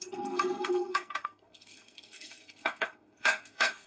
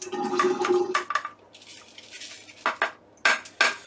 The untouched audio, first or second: second